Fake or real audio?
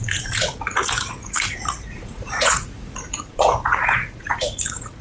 fake